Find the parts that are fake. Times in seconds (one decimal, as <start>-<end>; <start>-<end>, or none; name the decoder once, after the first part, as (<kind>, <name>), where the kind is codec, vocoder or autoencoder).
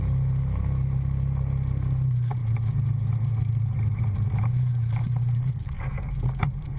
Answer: 0.0-2.4 (vocoder, BigVGAN v2); 3.5-6.8